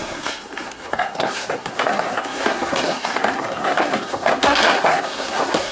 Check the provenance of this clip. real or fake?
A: fake